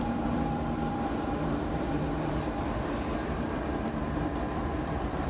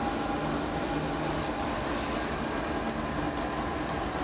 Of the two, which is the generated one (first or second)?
first